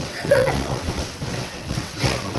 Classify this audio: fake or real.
fake